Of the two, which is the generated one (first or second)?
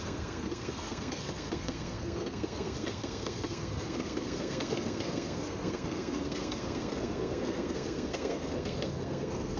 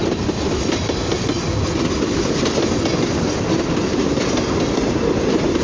first